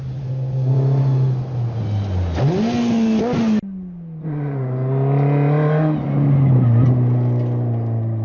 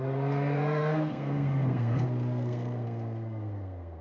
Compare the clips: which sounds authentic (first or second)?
first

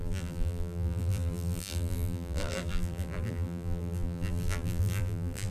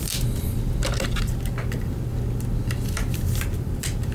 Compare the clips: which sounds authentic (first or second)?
second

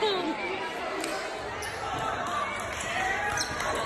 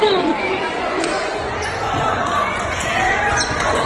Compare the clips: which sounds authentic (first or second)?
first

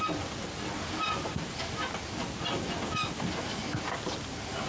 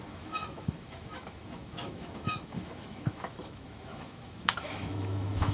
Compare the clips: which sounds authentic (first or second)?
first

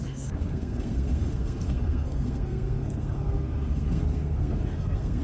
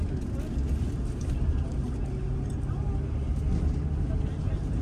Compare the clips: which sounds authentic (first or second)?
second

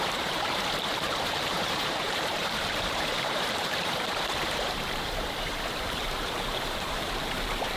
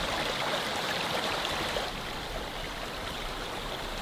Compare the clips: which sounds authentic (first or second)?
second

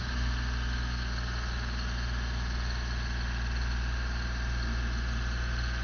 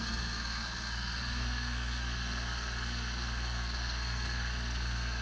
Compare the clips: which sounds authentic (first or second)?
first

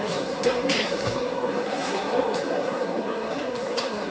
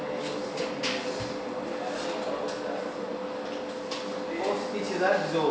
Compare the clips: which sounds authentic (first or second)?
second